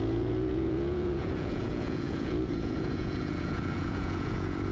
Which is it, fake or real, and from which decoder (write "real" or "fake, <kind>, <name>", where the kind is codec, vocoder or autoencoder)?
fake, vocoder, Vocos